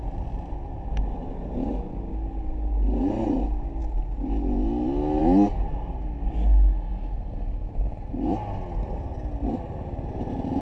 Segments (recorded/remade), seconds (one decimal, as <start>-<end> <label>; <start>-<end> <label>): 0.0-10.6 recorded